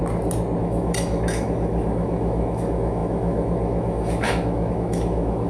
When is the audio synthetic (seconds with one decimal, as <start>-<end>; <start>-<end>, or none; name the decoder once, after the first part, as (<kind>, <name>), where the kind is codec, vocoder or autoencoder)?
0.6-5.5 (autoencoder, DAC-VAE)